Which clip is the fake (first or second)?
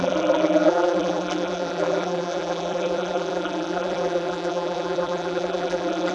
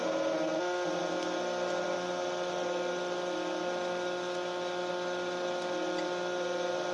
first